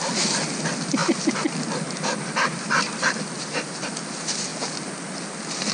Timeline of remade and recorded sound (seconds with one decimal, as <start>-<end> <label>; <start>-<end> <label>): 0.0-5.7 recorded